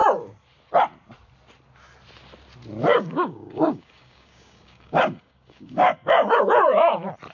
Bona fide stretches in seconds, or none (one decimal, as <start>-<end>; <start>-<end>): 0.0-2.9; 6.4-7.3